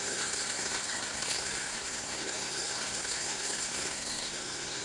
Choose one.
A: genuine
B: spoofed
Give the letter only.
B